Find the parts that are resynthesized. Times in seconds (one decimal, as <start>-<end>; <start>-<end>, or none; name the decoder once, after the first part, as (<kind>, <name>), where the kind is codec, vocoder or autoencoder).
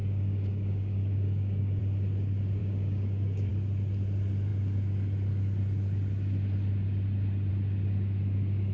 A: 0.0-1.8 (codec, DAC); 2.6-3.5